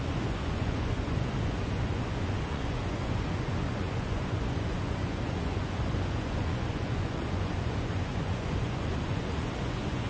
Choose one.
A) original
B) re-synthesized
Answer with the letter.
B